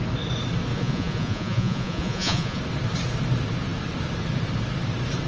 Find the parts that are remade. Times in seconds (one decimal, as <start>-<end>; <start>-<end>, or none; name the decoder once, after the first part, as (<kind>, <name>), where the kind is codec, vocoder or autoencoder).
0.7-2.6 (vocoder, Vocos)